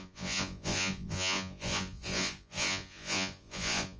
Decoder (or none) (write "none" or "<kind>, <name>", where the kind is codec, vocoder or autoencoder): vocoder, Vocos